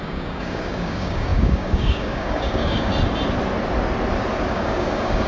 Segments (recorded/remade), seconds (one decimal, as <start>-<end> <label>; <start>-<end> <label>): 0.0-2.9 remade; 2.9-4.5 recorded; 4.5-5.3 remade

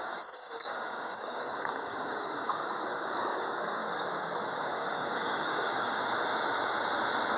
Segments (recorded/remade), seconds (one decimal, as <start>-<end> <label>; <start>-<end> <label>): 0.0-3.8 remade; 3.8-4.6 recorded; 4.6-6.0 remade; 6.0-7.4 recorded

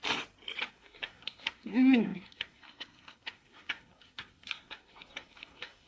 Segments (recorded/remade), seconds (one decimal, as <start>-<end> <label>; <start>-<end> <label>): 0.0-0.7 recorded; 0.7-5.9 remade

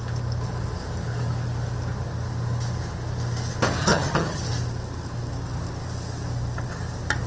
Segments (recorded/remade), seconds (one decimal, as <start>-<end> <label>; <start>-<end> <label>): 0.0-3.8 recorded; 3.8-4.4 remade; 4.4-7.3 recorded

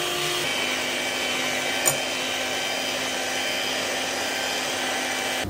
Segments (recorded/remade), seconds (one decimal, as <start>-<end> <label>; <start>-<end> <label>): 0.0-5.5 recorded

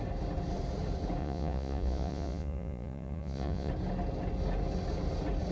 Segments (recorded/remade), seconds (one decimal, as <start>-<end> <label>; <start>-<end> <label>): 0.0-1.2 recorded; 1.2-3.7 remade; 3.7-5.5 recorded